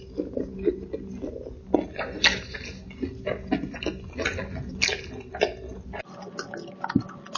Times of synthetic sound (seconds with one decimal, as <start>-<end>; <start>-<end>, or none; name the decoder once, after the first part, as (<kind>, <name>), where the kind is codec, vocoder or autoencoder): none